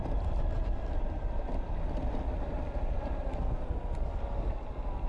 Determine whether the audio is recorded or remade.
recorded